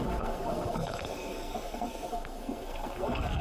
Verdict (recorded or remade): remade